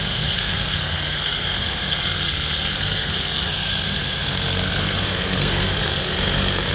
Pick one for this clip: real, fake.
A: fake